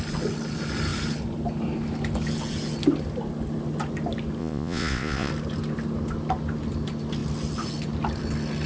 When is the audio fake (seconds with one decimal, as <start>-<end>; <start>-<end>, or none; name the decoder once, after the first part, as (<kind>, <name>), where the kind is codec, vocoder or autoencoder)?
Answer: 4.4-5.3 (vocoder, Vocos)